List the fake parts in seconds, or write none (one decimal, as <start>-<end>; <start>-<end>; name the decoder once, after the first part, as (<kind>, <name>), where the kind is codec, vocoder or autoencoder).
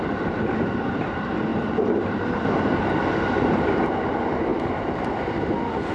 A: 0.0-4.5 (vocoder, BigVGAN v2)